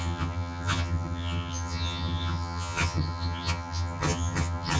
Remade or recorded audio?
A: remade